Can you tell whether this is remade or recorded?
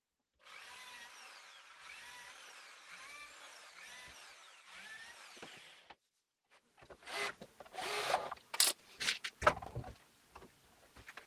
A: recorded